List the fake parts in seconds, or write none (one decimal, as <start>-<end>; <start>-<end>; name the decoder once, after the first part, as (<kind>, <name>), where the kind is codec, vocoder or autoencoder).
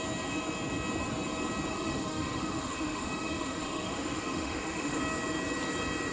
1.7-5.0 (autoencoder, DAC-VAE)